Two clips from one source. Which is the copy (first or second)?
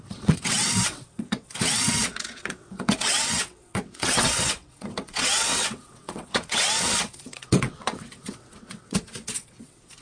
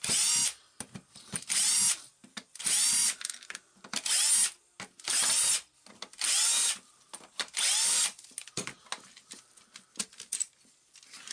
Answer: first